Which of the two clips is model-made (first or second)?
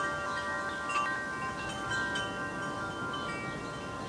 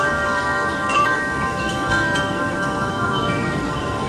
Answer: second